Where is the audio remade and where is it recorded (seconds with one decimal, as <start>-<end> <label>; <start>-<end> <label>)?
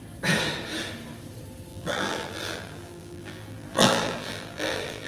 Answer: 0.0-1.7 recorded; 1.7-5.1 remade